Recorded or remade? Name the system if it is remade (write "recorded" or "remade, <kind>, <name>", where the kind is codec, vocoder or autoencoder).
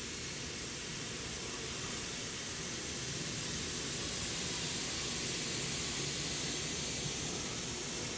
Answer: recorded